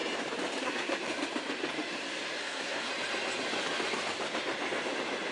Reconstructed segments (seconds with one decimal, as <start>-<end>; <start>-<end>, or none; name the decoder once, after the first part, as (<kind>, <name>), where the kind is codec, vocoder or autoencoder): 0.6-1.1 (codec, SNAC); 2.4-2.9